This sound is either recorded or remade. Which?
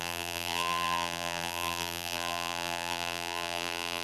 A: remade